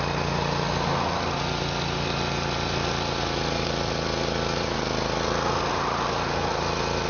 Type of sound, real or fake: real